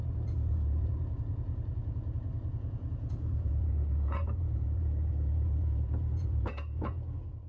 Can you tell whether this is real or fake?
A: fake